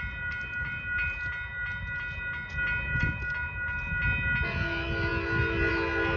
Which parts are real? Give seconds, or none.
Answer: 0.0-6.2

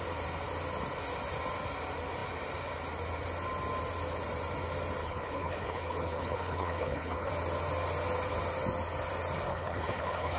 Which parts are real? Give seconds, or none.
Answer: 0.0-5.0; 7.3-9.5

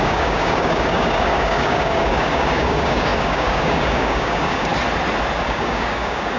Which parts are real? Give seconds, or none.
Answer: 4.7-5.4

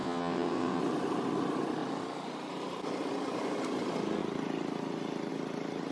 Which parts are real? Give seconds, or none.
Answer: 0.8-5.9